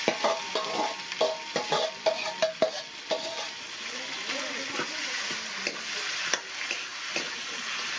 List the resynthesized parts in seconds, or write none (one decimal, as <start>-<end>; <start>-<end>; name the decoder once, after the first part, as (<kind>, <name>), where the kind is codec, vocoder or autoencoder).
none

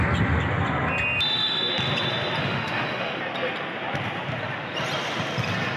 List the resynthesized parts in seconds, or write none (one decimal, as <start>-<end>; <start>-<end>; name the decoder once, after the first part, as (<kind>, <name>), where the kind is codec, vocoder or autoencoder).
2.4-3.2 (autoencoder, DAC-VAE)

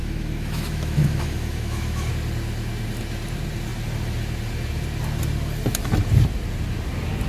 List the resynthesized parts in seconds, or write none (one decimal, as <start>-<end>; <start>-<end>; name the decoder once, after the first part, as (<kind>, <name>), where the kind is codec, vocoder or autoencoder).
0.0-2.1 (autoencoder, DAC-VAE)

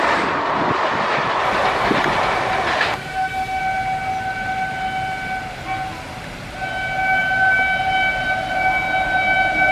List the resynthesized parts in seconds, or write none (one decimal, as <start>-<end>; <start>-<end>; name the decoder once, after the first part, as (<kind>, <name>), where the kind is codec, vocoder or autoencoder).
2.7-3.6 (autoencoder, DAC-VAE)

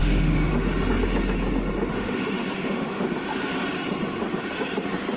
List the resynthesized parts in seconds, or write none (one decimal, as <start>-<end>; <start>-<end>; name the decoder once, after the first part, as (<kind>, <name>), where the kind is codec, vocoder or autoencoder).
0.0-0.5 (autoencoder, DAC-VAE); 1.9-3.0

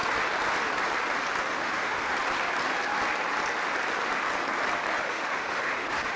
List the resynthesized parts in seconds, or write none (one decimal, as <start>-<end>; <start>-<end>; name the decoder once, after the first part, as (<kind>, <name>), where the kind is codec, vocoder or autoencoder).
1.4-2.1 (autoencoder, DAC-VAE); 5.0-6.2